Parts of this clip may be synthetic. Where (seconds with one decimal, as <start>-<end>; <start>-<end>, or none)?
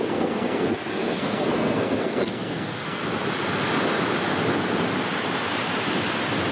0.0-3.0